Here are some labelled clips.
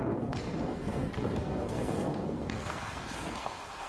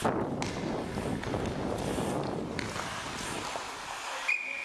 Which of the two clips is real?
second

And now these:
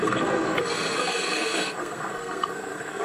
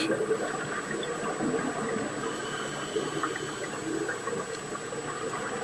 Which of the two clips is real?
second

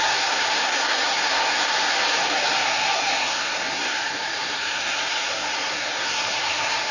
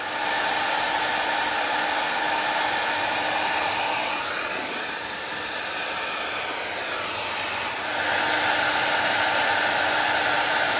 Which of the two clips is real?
second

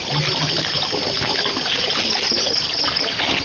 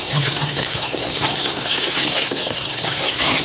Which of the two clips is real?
first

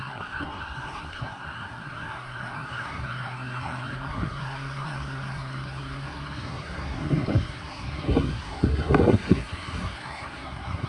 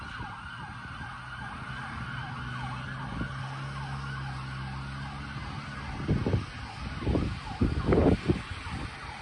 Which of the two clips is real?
second